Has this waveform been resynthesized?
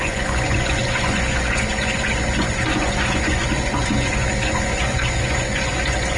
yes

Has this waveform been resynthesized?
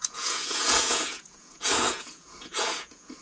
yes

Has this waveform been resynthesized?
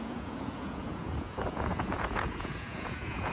yes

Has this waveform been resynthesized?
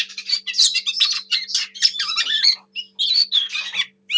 no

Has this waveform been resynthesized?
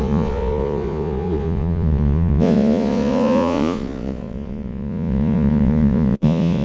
yes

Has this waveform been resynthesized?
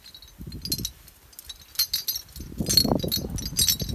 no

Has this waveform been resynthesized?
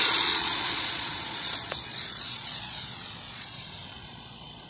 yes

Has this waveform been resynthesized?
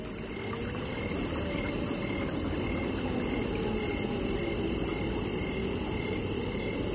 no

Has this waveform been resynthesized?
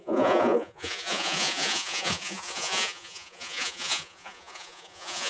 yes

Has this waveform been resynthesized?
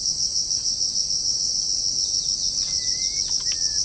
no